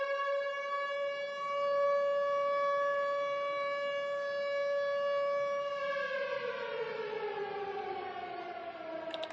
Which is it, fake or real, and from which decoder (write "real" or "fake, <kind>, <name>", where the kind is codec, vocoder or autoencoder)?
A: real